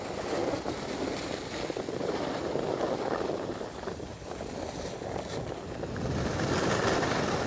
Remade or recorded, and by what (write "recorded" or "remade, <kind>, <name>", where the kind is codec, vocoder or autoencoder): recorded